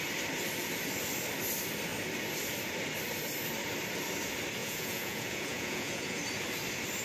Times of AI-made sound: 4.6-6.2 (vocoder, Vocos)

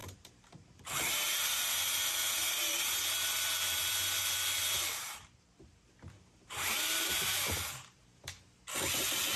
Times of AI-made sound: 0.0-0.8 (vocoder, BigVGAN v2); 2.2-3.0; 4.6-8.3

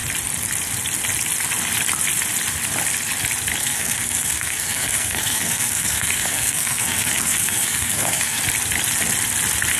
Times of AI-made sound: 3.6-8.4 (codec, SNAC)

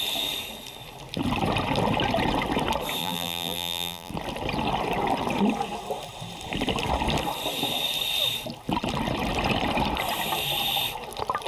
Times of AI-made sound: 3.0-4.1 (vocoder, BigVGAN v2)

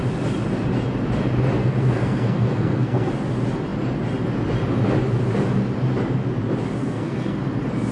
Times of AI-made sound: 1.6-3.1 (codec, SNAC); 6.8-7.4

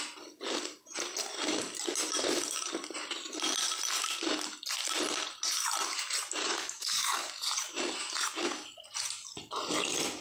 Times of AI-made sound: 6.4-7.3 (codec, DAC)